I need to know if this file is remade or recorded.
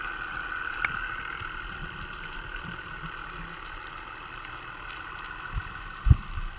recorded